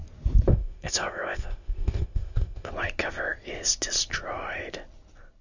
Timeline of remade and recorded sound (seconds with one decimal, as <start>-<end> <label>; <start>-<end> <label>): 0.0-0.5 recorded; 0.5-2.7 remade; 2.7-5.4 recorded